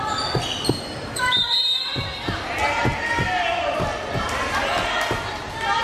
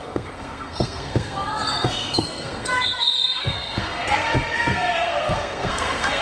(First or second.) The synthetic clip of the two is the second